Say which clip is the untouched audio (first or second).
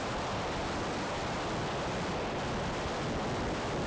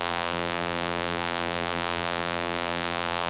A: first